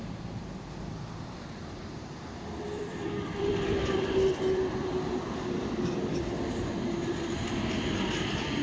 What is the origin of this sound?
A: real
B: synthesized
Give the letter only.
B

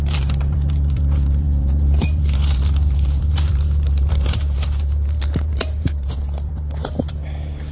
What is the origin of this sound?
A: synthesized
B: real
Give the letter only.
A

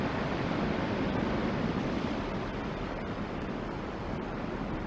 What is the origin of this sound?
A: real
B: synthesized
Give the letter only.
A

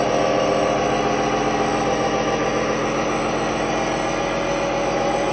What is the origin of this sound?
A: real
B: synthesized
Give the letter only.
A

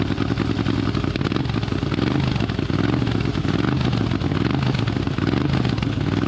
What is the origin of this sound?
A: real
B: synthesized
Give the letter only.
A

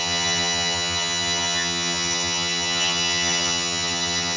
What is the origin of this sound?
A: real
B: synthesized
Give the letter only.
B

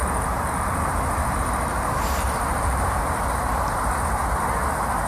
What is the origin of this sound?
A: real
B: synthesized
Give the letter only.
B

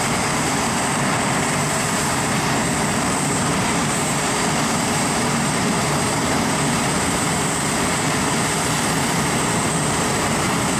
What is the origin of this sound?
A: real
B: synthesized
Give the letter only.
B